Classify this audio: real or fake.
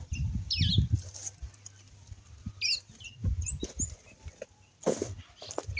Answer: real